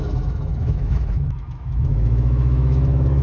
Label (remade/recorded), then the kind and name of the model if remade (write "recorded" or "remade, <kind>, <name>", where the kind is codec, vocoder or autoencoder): remade, autoencoder, DAC-VAE